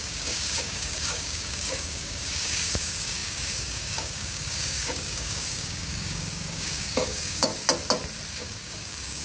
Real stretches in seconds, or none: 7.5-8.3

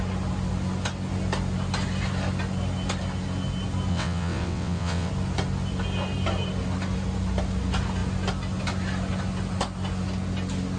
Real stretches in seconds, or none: 0.0-3.9; 5.1-10.8

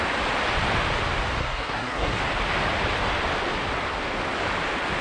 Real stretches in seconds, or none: 0.0-1.4; 2.2-5.0

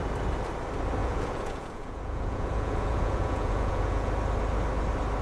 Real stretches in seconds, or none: 0.0-1.0; 4.1-5.2